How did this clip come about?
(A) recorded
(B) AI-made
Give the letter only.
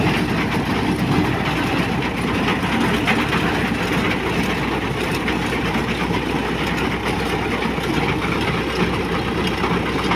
A